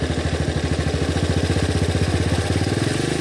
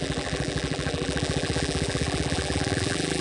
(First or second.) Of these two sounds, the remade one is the second